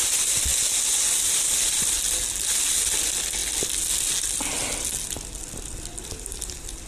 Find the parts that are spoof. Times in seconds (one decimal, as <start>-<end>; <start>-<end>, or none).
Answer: none